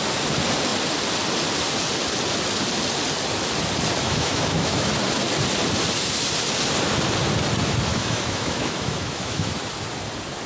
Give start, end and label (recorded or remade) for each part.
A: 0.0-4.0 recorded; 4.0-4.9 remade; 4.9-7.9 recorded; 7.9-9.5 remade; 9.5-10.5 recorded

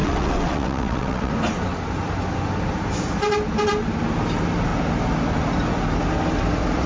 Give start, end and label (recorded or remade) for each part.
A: 0.0-1.3 remade; 1.3-6.9 recorded

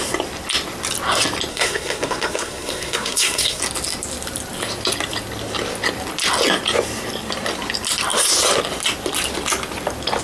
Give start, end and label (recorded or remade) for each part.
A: 0.0-1.5 recorded; 1.5-3.6 remade; 3.6-10.2 recorded

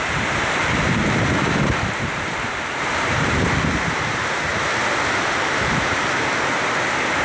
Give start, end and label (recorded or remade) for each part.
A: 0.0-4.5 remade; 4.5-5.2 recorded; 5.2-7.2 remade

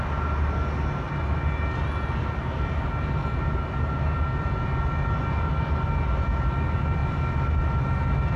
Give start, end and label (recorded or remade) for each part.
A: 0.0-8.4 recorded

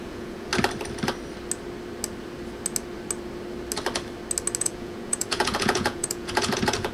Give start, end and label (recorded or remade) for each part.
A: 0.0-0.5 remade; 0.5-4.6 recorded; 4.6-6.9 remade